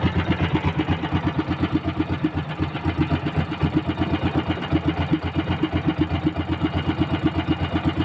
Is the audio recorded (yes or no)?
yes